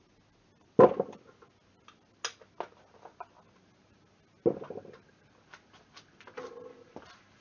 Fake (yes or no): no